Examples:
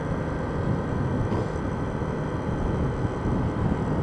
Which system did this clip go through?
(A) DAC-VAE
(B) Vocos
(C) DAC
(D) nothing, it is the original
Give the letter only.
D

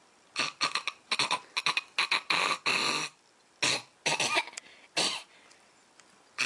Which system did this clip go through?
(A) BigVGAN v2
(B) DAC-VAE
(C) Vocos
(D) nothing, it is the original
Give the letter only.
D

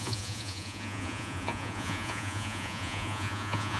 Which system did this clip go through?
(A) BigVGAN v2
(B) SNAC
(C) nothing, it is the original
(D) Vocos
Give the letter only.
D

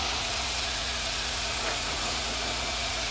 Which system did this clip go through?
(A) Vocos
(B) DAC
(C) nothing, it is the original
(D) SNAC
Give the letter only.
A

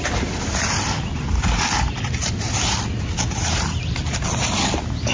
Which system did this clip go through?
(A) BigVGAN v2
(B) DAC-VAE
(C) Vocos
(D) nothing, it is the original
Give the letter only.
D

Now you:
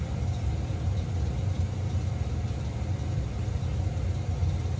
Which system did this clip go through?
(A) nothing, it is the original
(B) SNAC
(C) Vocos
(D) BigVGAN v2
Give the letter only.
A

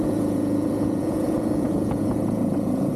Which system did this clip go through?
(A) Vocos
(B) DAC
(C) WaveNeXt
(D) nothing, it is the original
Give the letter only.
A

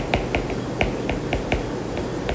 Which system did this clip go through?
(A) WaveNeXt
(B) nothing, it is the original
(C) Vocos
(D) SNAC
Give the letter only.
B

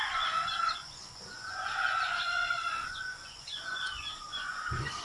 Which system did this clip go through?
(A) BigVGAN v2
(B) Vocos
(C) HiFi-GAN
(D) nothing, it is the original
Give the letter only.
B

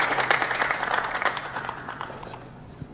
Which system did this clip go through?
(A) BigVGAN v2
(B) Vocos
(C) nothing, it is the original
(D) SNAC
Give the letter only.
B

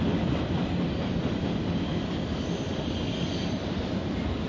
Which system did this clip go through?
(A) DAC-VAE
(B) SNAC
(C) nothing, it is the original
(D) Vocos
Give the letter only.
C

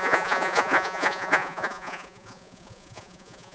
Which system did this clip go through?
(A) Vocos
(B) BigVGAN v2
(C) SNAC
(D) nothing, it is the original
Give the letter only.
A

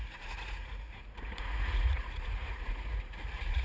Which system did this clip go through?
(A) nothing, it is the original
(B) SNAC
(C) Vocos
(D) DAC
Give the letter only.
C